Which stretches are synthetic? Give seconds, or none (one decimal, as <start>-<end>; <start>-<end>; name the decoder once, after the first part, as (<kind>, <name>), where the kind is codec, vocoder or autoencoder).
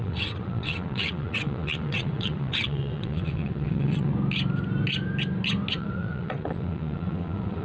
0.0-4.1 (vocoder, WaveNeXt); 5.7-7.6